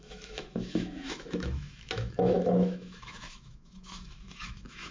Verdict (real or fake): fake